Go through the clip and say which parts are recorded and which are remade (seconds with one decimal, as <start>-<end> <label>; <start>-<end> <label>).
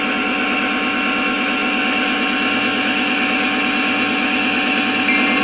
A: 0.0-5.4 recorded